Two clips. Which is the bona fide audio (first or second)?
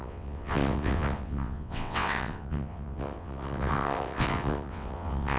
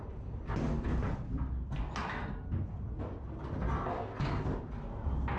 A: second